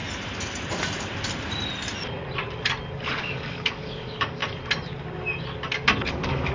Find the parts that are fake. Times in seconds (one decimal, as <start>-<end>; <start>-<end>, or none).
3.2-4.4; 6.1-6.5